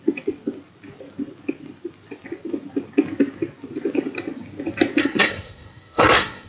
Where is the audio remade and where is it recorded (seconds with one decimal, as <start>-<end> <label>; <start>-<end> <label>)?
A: 0.0-5.0 recorded; 5.0-6.5 remade